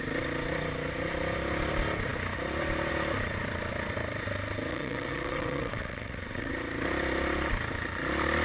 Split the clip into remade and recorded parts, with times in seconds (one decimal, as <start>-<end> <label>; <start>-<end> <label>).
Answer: 0.0-4.7 recorded; 4.7-6.5 remade; 6.5-8.4 recorded